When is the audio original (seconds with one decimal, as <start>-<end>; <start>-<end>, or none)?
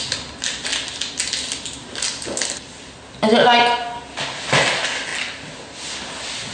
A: 0.0-6.5